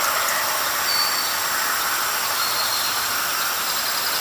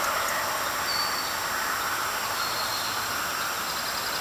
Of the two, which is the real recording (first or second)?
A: second